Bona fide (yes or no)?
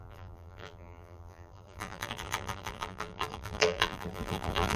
no